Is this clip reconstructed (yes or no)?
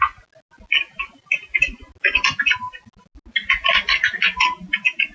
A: no